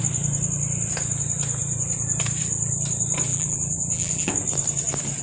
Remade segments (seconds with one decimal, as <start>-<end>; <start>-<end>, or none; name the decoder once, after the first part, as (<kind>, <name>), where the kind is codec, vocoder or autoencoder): 3.3-4.3 (vocoder, BigVGAN v2)